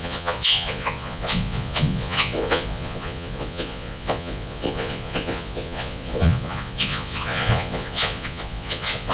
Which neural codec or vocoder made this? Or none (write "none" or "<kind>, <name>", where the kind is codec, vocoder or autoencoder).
vocoder, Vocos